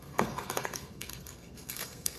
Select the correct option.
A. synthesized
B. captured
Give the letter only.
A